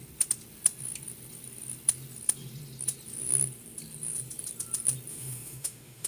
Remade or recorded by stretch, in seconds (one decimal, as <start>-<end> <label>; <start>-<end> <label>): 0.0-5.1 recorded; 5.1-6.1 remade